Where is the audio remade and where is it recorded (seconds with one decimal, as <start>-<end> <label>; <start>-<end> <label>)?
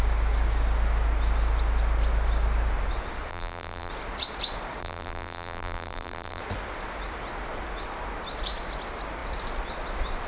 0.0-3.3 recorded; 3.3-3.9 remade; 3.9-4.8 recorded; 4.8-6.4 remade; 6.4-10.3 recorded